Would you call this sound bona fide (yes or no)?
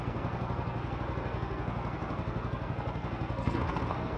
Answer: no